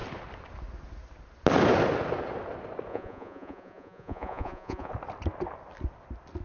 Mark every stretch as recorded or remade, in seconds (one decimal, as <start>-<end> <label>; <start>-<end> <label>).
0.0-2.9 recorded; 2.9-4.9 remade; 4.9-6.4 recorded